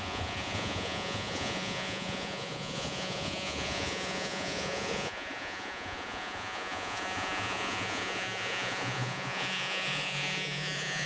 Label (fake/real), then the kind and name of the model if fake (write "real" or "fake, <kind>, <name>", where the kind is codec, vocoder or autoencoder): fake, vocoder, Vocos